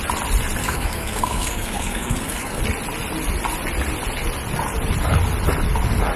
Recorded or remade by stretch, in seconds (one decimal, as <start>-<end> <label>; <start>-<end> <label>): 0.0-0.6 recorded; 0.6-2.6 remade; 2.6-6.2 recorded